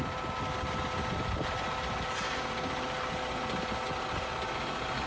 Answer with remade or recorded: recorded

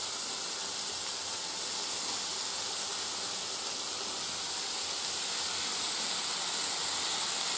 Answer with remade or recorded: recorded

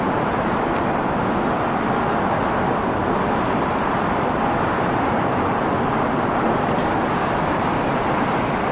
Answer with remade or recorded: recorded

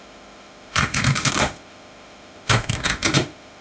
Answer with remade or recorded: remade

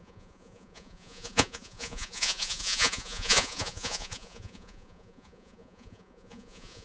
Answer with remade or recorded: remade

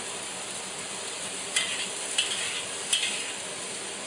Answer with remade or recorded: recorded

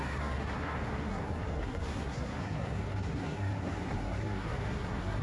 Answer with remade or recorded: remade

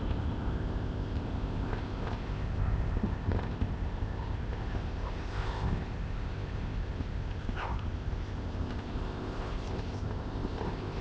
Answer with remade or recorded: remade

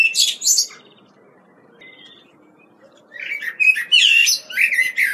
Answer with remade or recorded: recorded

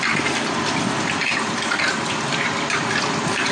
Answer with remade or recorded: recorded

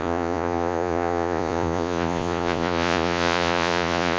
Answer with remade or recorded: remade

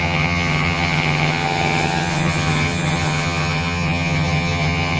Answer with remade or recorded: remade